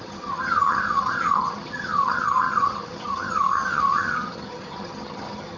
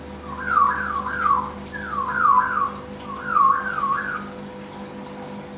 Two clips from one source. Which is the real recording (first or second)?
second